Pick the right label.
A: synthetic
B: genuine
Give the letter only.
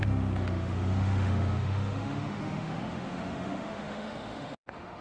A